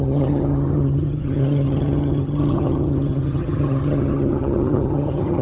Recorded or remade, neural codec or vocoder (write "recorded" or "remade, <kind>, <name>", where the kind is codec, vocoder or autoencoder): remade, vocoder, HiFi-GAN